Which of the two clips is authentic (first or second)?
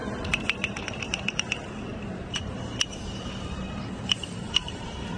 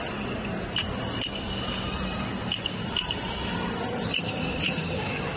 second